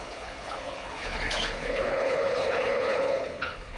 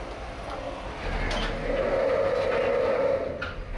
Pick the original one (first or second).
second